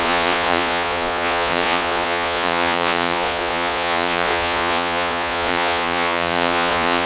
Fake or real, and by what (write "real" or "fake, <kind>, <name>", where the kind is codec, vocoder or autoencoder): fake, vocoder, Vocos